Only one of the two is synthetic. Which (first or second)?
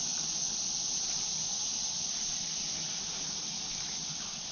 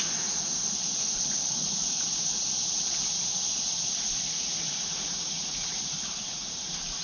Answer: second